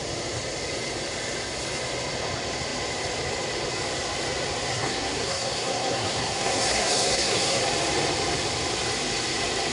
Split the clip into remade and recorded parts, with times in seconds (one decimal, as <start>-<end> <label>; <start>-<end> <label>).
0.0-4.7 recorded; 4.7-7.6 remade; 7.6-9.7 recorded